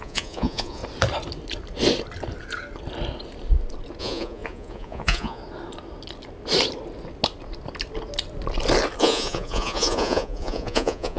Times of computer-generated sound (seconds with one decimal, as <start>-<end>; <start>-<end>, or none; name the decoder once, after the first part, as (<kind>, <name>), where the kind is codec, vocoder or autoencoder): 0.0-0.8 (vocoder, Vocos); 4.0-5.4; 9.0-11.2